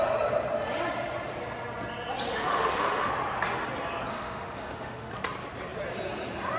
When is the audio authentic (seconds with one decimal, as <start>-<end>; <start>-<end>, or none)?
0.0-2.3; 3.1-4.1; 5.1-6.6